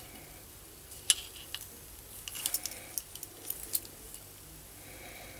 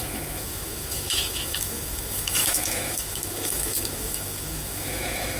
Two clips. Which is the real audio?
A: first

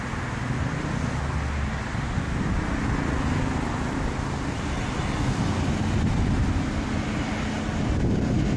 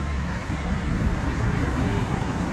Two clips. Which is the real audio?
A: first